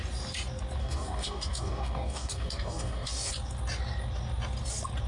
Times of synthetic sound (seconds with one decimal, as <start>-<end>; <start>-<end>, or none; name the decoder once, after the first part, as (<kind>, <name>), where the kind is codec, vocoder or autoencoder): 0.8-3.3 (codec, DAC)